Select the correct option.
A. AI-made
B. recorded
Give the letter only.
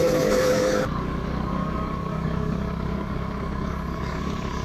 A